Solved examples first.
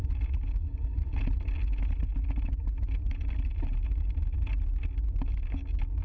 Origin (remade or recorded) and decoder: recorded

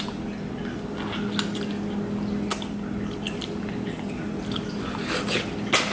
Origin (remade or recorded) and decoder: recorded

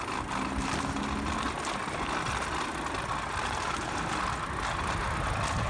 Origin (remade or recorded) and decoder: recorded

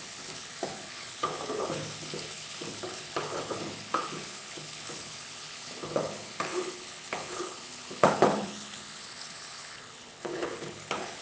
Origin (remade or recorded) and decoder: remade, codec, HILCodec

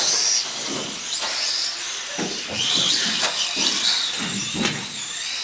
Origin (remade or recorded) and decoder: recorded